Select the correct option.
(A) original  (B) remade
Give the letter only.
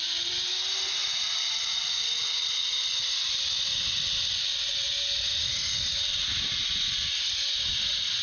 A